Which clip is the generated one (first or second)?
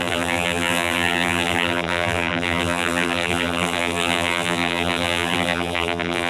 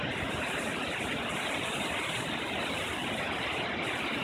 first